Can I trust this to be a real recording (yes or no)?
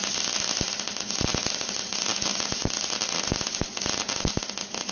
yes